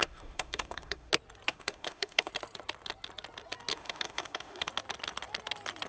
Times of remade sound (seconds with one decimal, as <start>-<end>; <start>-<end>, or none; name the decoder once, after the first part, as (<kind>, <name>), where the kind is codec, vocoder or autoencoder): 0.0-1.1 (autoencoder, DAC-VAE); 1.5-2.3; 3.7-4.7